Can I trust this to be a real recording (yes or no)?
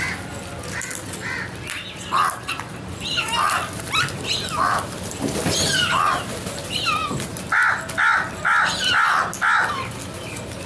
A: yes